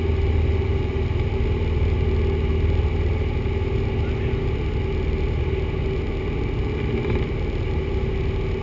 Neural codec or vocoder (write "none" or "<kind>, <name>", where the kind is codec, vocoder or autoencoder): none